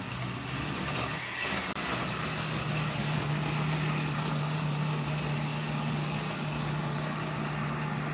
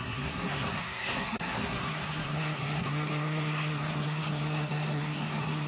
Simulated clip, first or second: second